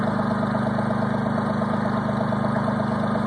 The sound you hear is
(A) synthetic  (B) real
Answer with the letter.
B